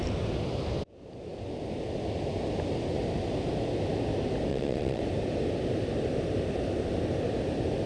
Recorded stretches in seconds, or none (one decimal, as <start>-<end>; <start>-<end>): 0.0-4.5; 5.0-7.9